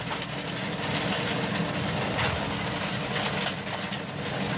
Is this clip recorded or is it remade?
recorded